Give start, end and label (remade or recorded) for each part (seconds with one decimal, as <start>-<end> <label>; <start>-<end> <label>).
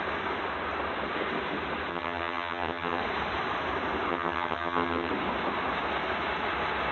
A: 0.0-1.9 recorded; 1.9-3.0 remade; 3.0-4.1 recorded; 4.1-5.1 remade; 5.1-6.9 recorded